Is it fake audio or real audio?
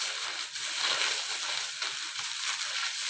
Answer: real